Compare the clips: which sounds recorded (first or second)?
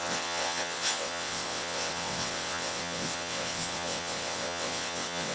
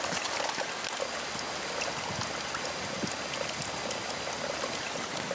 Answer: second